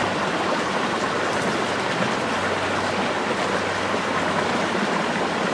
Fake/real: real